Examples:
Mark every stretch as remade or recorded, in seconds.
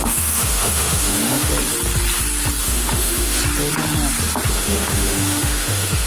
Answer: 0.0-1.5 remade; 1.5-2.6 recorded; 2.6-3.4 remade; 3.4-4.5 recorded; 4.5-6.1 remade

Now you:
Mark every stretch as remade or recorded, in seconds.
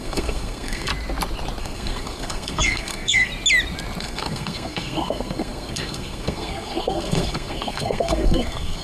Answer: 0.0-0.9 remade; 0.9-1.6 recorded; 1.6-3.3 remade; 3.3-4.0 recorded; 4.0-8.8 remade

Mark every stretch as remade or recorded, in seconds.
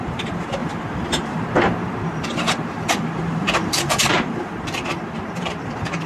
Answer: 0.0-6.1 remade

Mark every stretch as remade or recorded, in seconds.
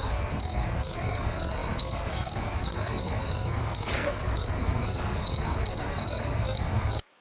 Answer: 0.0-7.2 remade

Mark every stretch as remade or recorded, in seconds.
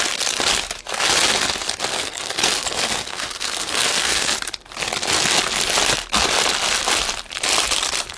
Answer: 0.0-1.9 recorded; 1.9-4.3 remade; 4.3-8.2 recorded